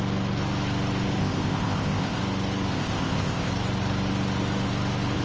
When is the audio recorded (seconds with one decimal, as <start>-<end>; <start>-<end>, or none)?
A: 0.0-1.2; 2.2-2.7; 3.5-5.2